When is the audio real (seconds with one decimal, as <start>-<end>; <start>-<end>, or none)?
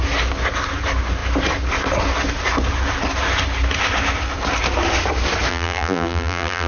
0.0-5.5